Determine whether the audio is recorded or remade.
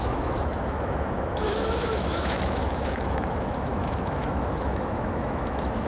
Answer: remade